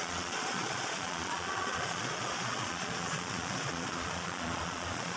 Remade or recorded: remade